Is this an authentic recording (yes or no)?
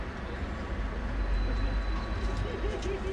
yes